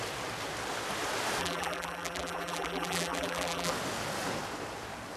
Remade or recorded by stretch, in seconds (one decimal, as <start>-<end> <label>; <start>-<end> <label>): 0.0-1.4 recorded; 1.4-3.7 remade; 3.7-5.2 recorded